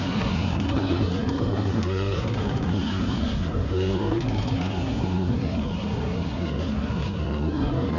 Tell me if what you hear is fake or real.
fake